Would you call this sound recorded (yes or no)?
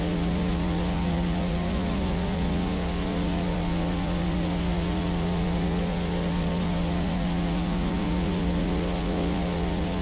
no